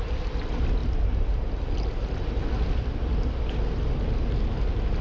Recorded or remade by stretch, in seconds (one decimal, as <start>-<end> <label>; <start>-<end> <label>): 0.0-5.0 recorded